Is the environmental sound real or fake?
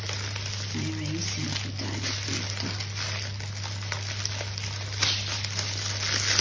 real